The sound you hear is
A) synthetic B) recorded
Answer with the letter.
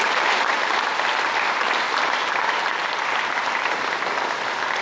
A